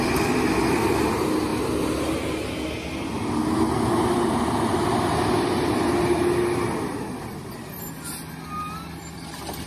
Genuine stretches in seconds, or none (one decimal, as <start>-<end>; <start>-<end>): 0.0-9.7

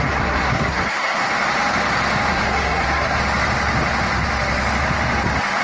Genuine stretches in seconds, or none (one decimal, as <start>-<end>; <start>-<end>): 1.3-2.3; 3.2-5.6

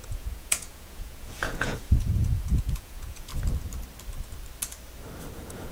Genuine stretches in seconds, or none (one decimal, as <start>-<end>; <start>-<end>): 3.3-5.3

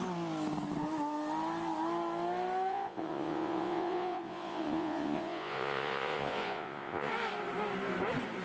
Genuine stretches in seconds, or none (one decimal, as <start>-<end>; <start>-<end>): 0.0-2.7; 7.1-8.4

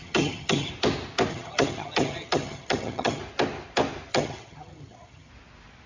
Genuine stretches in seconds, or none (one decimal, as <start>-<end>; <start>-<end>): 0.7-1.3; 3.2-4.1; 5.3-5.9